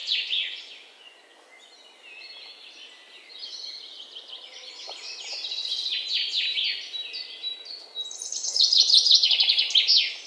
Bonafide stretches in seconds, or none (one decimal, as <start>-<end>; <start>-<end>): 1.7-8.4; 9.3-10.3